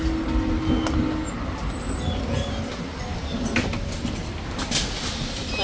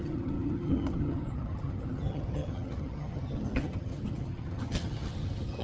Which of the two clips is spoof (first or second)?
second